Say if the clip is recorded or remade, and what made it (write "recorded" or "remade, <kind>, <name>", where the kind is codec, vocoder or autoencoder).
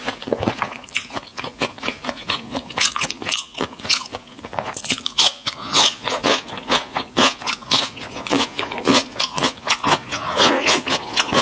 remade, vocoder, Vocos